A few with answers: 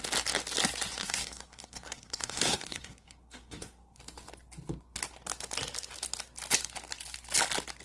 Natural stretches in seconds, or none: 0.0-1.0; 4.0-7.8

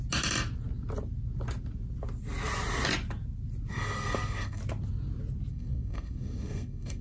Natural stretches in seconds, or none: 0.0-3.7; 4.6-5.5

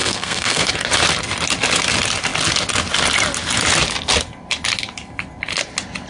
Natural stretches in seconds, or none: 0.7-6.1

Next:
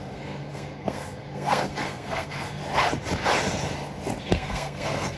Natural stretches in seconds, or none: 2.6-4.3